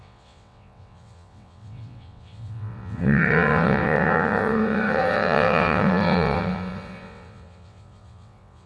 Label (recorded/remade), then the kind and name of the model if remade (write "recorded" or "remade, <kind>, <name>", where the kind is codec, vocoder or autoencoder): remade, vocoder, WaveNeXt